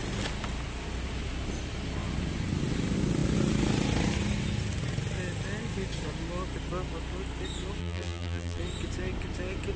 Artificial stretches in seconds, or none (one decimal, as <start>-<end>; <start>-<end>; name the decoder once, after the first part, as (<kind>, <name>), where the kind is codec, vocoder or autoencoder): 7.8-8.6 (vocoder, BigVGAN v2)